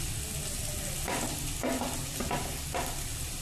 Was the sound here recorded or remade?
recorded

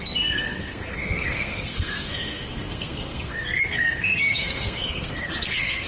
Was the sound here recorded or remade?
remade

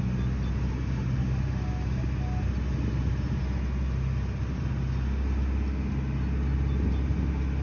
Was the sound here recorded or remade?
recorded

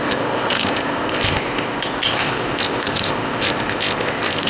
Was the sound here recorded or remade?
remade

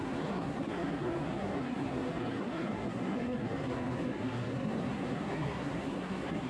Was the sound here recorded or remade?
remade